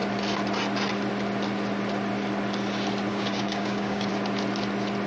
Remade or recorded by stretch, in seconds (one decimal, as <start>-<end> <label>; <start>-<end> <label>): 0.0-3.1 recorded; 3.1-4.1 remade; 4.1-5.1 recorded